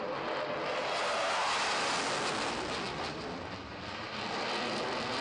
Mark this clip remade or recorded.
recorded